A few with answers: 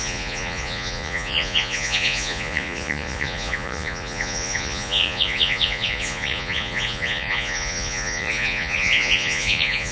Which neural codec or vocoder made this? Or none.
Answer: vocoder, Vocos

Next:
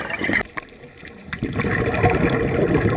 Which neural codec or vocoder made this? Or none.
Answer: vocoder, BigVGAN v2